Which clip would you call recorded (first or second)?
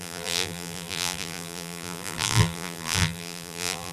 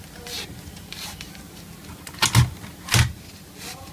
second